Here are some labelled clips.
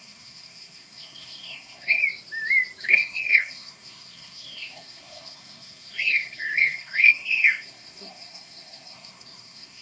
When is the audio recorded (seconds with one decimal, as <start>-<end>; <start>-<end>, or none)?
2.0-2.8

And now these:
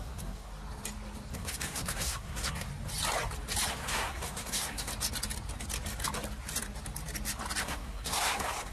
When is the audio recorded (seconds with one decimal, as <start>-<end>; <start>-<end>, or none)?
0.5-1.3; 2.7-3.7; 4.9-7.6

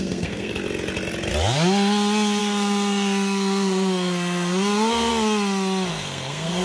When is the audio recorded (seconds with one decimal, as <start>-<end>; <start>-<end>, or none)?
0.5-2.4; 5.1-5.9

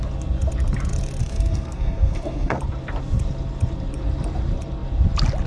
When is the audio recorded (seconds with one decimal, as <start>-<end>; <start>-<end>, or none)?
0.0-1.2; 2.6-5.5

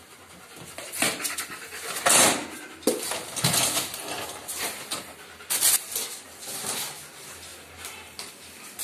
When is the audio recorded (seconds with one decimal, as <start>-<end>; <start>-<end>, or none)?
0.0-8.8

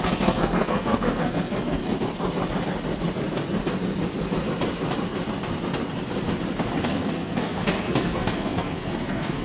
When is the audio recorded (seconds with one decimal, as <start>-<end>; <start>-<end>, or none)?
1.8-6.8